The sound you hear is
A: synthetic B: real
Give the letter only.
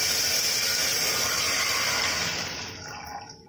B